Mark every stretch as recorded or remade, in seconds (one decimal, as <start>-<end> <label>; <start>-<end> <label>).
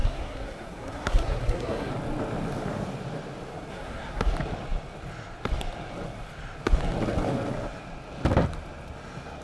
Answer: 0.0-1.9 remade; 1.9-3.7 recorded; 3.7-4.2 remade; 4.2-9.4 recorded